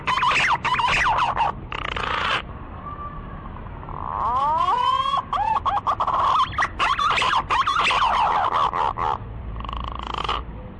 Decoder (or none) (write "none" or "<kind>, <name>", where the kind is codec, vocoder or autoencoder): none